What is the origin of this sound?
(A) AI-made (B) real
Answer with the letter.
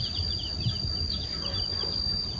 B